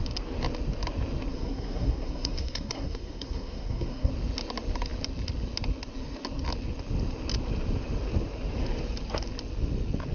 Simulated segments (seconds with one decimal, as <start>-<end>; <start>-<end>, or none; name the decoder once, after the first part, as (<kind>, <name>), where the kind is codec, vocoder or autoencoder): 1.3-4.1 (codec, SNAC)